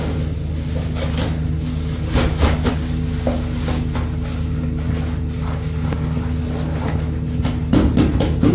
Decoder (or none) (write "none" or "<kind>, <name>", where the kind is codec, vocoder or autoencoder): none